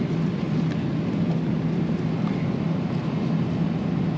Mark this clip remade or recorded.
recorded